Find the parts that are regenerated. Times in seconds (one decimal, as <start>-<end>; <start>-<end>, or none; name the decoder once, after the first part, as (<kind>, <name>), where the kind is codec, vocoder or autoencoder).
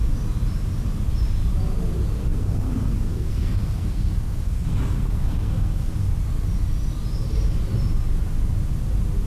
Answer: 2.2-6.1 (codec, SNAC)